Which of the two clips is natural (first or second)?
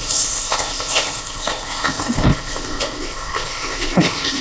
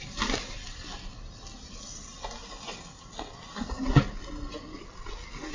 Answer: second